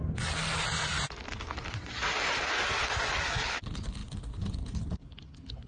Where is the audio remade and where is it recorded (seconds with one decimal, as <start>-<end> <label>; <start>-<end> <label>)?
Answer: 0.0-3.4 recorded; 3.4-5.7 remade